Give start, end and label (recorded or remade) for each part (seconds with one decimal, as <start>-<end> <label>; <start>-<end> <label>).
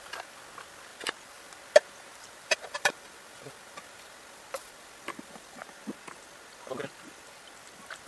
0.0-0.9 recorded; 0.9-1.5 remade; 1.5-2.1 recorded; 2.1-5.6 remade; 5.6-8.1 recorded